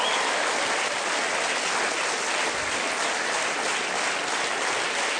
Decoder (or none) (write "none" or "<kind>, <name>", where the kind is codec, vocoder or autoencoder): none